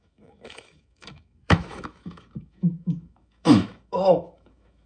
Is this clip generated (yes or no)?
yes